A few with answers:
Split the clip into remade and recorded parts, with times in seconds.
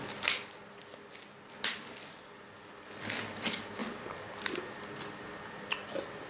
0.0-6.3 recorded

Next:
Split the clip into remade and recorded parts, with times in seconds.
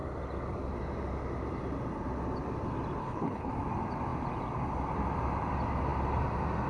0.0-3.0 recorded; 3.0-3.5 remade; 3.5-6.7 recorded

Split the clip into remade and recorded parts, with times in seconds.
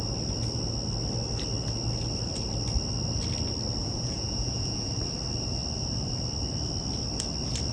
0.0-3.8 recorded; 3.8-4.9 remade; 4.9-7.7 recorded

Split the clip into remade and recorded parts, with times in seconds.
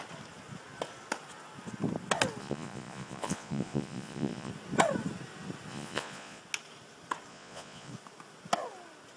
0.0-2.4 recorded; 2.4-4.5 remade; 4.5-5.7 recorded; 5.7-6.4 remade; 6.4-7.3 recorded; 7.3-7.9 remade; 7.9-9.2 recorded